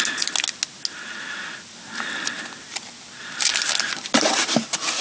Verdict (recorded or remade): recorded